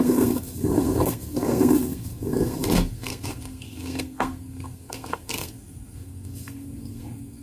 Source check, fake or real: fake